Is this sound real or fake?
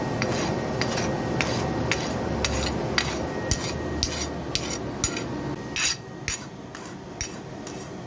real